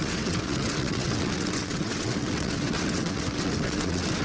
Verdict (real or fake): fake